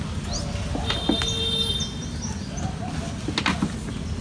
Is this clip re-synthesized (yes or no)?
no